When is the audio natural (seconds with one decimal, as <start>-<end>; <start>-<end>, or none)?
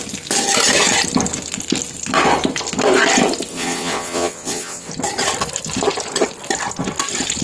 0.0-3.5; 4.9-7.4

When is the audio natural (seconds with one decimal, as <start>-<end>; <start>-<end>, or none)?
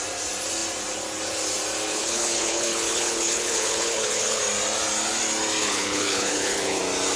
0.0-1.9; 4.4-5.6; 6.8-7.2